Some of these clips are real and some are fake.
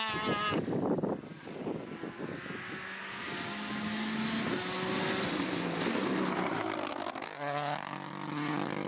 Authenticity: real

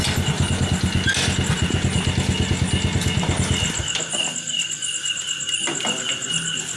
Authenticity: real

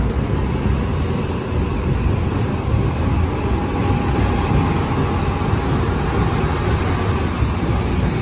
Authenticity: real